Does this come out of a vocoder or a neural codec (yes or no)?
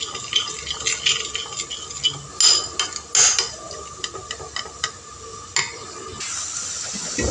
no